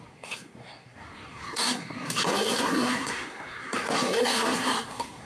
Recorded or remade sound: remade